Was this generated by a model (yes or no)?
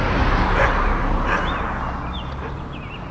no